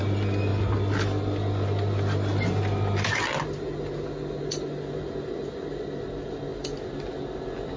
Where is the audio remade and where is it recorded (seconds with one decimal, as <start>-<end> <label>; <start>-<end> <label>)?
0.0-7.8 recorded